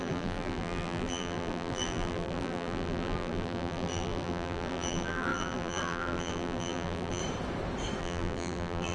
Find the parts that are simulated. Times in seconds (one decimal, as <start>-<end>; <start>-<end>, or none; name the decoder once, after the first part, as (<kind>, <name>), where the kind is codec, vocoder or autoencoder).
0.0-7.2 (vocoder, BigVGAN v2); 8.0-8.9